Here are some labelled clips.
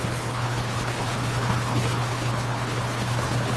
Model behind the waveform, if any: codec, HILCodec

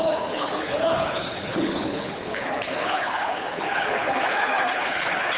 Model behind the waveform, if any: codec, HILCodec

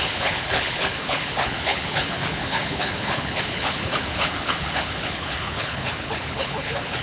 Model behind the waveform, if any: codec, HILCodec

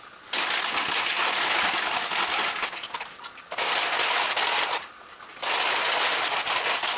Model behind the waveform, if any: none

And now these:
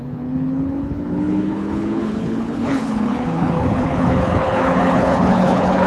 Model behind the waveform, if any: codec, HILCodec